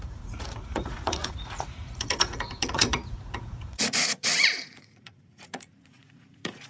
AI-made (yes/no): yes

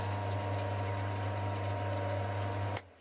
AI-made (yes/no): no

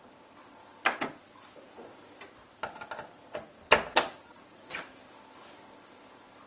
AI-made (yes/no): no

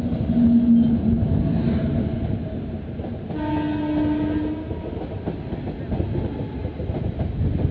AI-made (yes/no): no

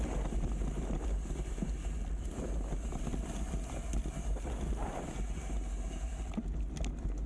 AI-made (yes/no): no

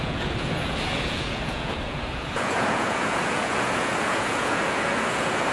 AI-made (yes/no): yes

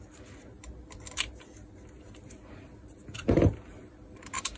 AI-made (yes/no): no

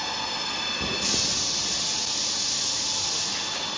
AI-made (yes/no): no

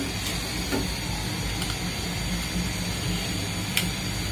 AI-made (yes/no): no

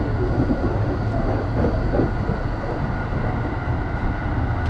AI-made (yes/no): no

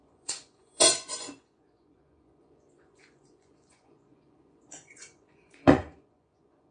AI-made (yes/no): yes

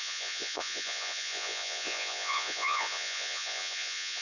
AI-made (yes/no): yes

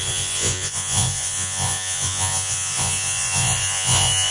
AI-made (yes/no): yes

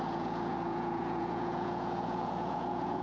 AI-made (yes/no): yes